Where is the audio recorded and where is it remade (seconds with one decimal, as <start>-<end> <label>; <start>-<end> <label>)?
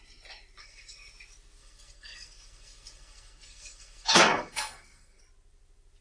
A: 0.0-0.6 recorded; 0.6-1.1 remade; 1.1-1.6 recorded; 1.6-5.2 remade; 5.2-6.0 recorded